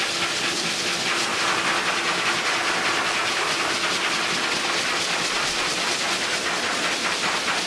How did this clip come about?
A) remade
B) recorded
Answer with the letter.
B